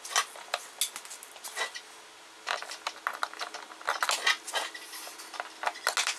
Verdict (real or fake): real